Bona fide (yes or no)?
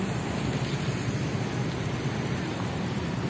yes